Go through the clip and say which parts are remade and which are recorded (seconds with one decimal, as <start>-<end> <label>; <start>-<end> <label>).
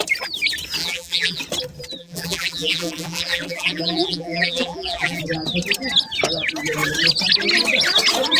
0.0-0.8 recorded; 0.8-1.4 remade; 1.4-2.0 recorded; 2.0-5.2 remade; 5.2-8.4 recorded